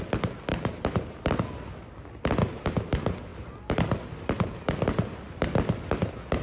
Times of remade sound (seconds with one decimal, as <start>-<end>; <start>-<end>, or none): 0.5-1.4